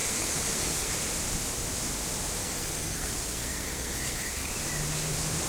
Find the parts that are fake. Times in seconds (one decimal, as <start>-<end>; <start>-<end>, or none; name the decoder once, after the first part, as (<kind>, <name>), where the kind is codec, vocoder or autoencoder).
0.0-0.9 (codec, SNAC); 2.4-4.5